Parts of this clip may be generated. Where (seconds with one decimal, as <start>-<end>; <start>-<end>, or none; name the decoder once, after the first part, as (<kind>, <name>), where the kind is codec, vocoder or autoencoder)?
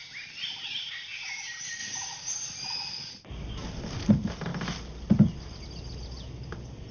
none